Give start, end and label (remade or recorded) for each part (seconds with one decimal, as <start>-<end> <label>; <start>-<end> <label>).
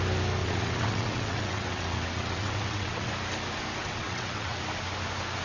0.0-0.4 recorded; 0.4-3.1 remade; 3.1-3.8 recorded; 3.8-4.6 remade; 4.6-5.4 recorded